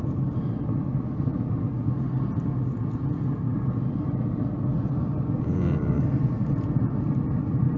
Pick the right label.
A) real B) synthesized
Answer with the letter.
A